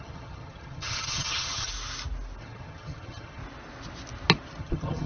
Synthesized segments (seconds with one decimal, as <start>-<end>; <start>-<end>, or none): 0.0-1.7; 2.4-3.4; 4.6-5.1